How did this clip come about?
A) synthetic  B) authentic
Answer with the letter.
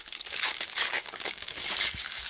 A